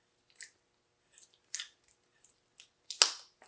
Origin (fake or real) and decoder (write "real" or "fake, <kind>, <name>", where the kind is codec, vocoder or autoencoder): real